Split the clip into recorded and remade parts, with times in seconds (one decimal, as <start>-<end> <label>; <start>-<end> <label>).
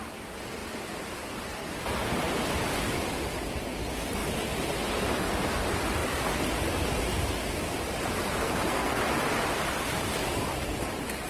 0.0-8.4 recorded; 8.4-9.0 remade; 9.0-11.3 recorded